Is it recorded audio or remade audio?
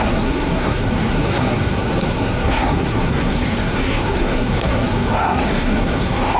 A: remade